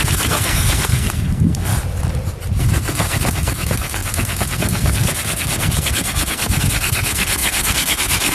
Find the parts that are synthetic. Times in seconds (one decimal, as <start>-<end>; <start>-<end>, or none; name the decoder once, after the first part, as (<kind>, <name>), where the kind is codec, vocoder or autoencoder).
0.0-1.7 (codec, SNAC); 2.6-8.3